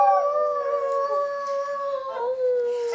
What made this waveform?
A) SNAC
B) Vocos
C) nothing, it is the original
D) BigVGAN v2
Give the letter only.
C